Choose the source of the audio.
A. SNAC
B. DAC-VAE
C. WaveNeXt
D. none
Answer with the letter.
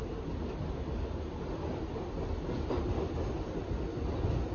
D